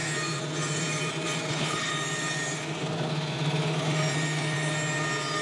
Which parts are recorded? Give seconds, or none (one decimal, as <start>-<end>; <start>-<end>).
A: 0.0-1.5; 1.9-5.4